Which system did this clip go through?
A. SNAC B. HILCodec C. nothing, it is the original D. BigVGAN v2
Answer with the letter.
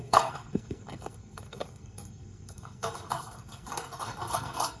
A